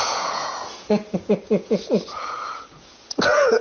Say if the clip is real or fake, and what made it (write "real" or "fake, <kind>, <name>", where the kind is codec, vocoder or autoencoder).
fake, vocoder, Vocos